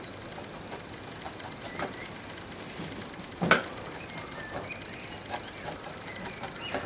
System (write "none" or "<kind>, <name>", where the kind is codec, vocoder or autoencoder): none